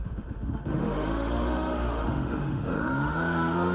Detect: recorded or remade remade